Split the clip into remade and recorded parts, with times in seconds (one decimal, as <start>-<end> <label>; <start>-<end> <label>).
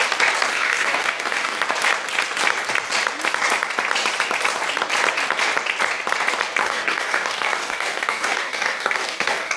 0.0-0.5 recorded; 0.5-1.6 remade; 1.6-6.6 recorded; 6.6-9.6 remade